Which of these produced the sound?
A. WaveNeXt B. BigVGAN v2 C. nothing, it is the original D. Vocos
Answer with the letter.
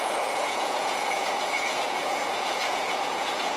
D